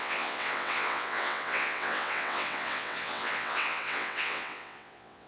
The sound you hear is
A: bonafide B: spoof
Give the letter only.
B